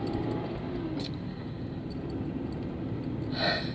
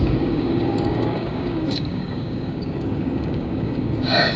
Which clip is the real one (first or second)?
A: first